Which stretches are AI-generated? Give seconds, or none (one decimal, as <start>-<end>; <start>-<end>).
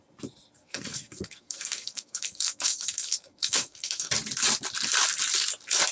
0.6-4.1